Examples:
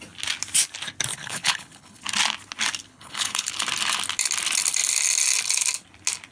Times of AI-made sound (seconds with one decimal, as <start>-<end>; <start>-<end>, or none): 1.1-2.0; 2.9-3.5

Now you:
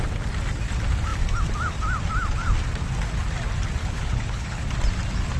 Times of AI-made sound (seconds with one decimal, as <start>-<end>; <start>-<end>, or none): 3.8-4.6

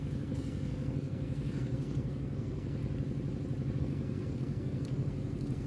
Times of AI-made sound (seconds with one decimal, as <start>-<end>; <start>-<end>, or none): 0.0-2.8; 3.8-5.7

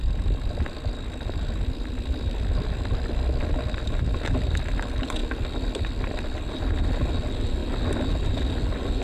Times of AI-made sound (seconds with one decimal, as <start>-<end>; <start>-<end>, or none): none

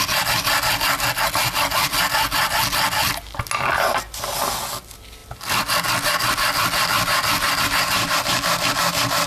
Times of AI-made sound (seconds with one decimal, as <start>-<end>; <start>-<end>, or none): none